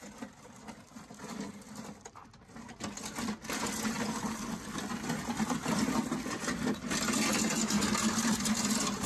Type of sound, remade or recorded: recorded